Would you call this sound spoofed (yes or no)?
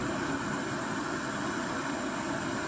no